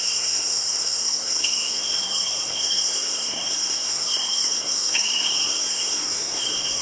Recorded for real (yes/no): no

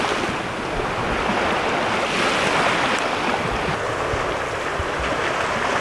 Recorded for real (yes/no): yes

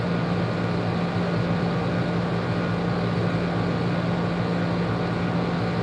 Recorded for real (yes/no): yes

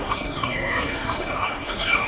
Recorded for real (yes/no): no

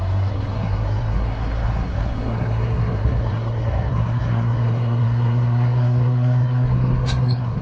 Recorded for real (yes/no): no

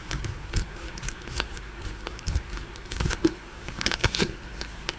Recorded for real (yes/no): no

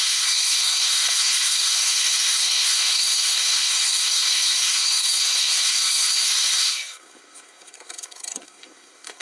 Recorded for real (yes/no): no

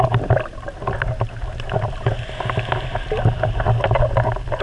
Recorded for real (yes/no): yes